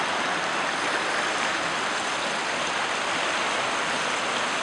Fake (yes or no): no